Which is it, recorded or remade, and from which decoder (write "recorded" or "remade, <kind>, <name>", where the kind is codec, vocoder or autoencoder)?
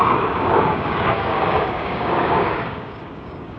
remade, codec, DAC